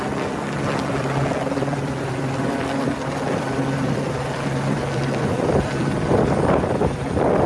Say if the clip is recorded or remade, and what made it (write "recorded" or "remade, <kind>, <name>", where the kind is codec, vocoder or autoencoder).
remade, vocoder, BigVGAN v2